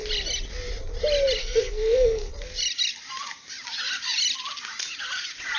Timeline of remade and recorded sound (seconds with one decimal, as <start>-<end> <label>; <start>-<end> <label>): 0.0-1.4 recorded; 1.4-2.3 remade; 2.3-5.6 recorded